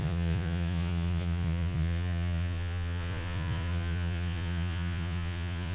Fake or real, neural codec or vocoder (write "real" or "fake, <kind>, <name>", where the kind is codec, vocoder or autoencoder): fake, vocoder, Vocos